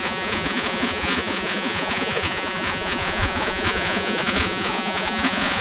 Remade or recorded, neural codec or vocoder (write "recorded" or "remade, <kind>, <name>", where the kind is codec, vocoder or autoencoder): remade, vocoder, Vocos